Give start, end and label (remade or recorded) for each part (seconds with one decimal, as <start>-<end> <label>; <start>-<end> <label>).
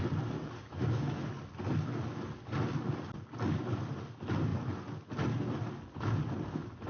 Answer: 0.0-0.7 recorded; 0.7-1.3 remade; 1.3-6.9 recorded